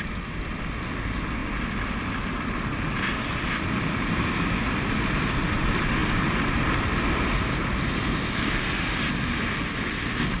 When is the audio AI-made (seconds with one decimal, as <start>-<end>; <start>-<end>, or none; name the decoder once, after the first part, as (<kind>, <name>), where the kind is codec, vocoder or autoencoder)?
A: none